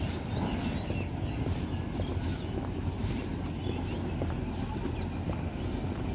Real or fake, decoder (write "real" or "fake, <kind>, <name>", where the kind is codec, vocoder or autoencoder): real